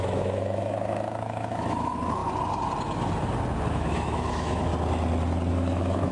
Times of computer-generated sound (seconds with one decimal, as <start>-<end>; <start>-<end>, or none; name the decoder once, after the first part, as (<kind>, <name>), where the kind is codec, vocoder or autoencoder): 0.0-2.2 (autoencoder, DAC-VAE); 3.7-4.7; 5.5-6.1